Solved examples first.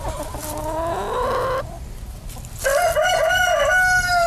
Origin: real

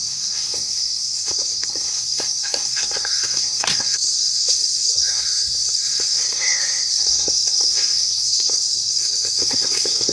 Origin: fake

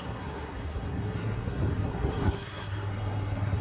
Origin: fake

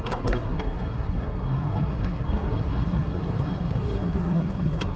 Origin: fake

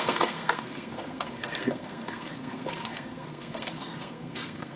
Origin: fake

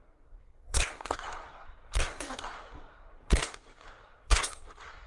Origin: fake